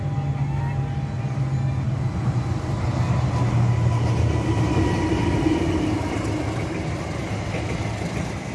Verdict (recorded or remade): recorded